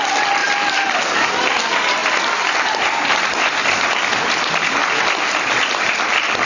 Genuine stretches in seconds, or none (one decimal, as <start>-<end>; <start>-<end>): 0.0-2.0; 5.9-6.5